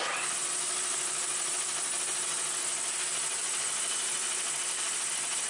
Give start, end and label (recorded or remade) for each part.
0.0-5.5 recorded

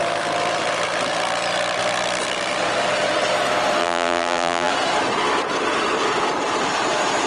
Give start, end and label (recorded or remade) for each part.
0.0-3.8 recorded; 3.8-4.7 remade; 4.7-7.3 recorded

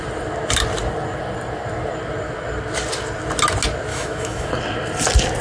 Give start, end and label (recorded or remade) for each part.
0.0-3.9 recorded; 3.9-4.5 remade; 4.5-5.4 recorded

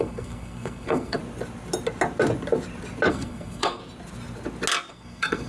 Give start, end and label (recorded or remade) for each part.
0.0-1.2 remade; 1.2-3.1 recorded; 3.1-3.8 remade; 3.8-4.9 recorded; 4.9-5.5 remade

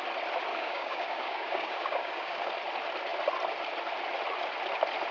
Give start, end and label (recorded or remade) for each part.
0.0-0.5 recorded; 0.5-2.5 remade; 2.5-5.1 recorded

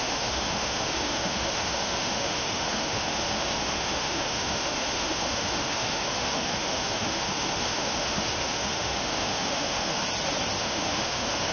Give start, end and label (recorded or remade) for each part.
0.0-10.0 remade; 10.0-10.6 recorded; 10.6-11.5 remade